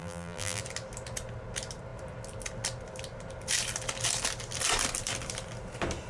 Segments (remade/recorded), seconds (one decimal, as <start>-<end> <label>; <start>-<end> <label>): 0.0-0.6 remade; 0.6-6.1 recorded